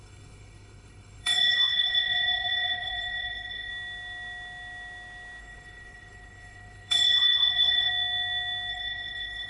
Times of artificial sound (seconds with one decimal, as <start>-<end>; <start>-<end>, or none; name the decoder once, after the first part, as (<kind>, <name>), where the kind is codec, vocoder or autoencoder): 0.0-3.7 (codec, HILCodec); 5.4-7.9; 8.7-9.5

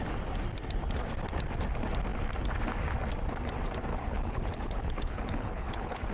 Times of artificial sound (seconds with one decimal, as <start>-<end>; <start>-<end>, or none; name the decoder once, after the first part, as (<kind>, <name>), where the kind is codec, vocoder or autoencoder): 3.9-6.1 (codec, HILCodec)